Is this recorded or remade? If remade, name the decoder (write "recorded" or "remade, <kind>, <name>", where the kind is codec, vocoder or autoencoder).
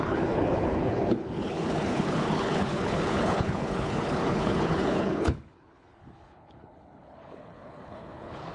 remade, codec, HILCodec